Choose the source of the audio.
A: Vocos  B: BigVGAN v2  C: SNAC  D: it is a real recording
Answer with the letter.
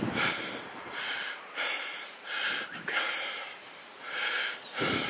B